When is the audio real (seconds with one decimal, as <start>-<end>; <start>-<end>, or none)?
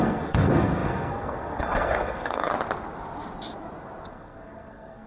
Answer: 2.5-4.1